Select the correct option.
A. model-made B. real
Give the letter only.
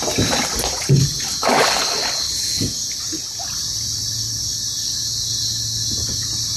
B